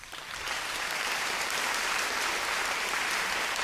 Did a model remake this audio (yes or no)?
yes